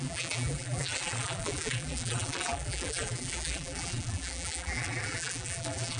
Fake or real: fake